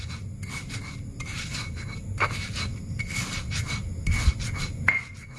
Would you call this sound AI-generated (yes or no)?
no